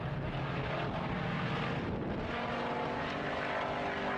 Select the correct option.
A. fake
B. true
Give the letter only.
B